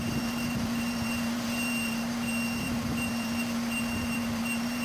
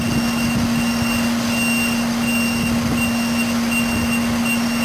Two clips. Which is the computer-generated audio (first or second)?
first